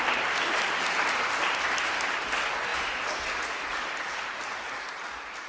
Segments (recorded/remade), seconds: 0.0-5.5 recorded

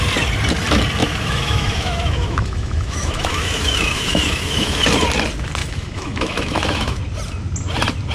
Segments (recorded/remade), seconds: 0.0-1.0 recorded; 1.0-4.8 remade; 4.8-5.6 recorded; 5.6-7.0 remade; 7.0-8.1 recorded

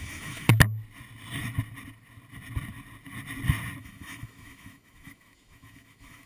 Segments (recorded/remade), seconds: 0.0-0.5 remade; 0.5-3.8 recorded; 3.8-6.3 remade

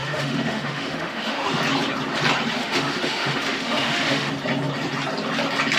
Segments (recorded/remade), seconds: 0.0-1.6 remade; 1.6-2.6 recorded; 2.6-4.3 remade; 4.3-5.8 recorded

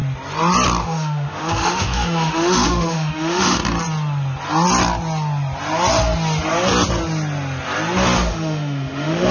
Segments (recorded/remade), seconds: 0.0-0.8 recorded; 0.8-3.6 remade; 3.6-8.3 recorded; 8.3-9.3 remade